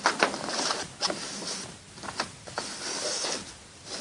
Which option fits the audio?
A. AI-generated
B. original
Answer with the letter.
B